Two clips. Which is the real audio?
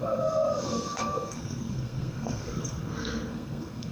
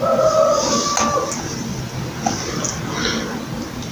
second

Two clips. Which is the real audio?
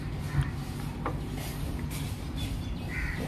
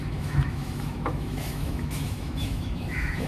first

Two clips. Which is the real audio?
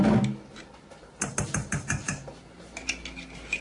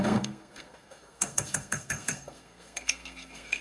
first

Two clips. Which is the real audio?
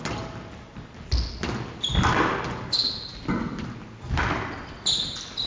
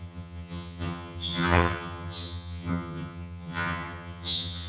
first